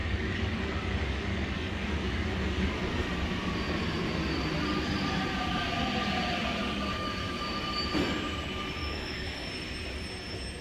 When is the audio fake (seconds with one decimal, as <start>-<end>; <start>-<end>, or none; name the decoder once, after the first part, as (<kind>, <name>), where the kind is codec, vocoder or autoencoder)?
0.0-2.7 (codec, DAC); 6.6-7.1; 8.8-9.5